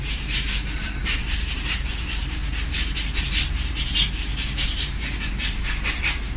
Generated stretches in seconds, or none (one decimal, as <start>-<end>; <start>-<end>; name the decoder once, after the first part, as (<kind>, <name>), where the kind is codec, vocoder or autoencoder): 0.0-2.4 (vocoder, BigVGAN v2); 3.2-6.4